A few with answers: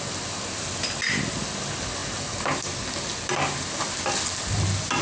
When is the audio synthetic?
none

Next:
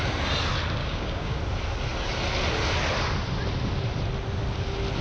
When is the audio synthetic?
0.8-1.4 (codec, DAC)

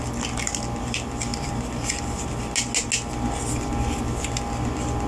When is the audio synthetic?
none

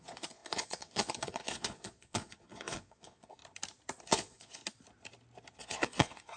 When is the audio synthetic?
0.0-3.4 (vocoder, Vocos); 4.0-4.6; 5.6-6.4

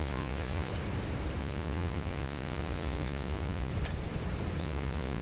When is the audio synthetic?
0.0-0.7 (vocoder, Vocos); 1.4-3.7; 4.6-5.2

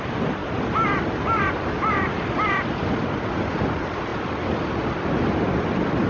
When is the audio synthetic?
none